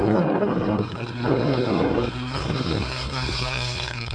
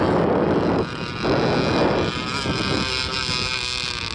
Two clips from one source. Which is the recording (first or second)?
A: second